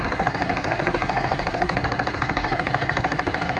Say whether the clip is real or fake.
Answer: fake